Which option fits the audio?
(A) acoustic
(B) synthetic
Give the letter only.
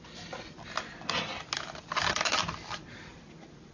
A